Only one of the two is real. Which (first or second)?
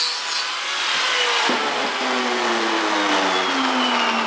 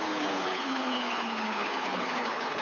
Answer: first